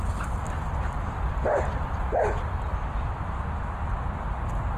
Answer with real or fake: real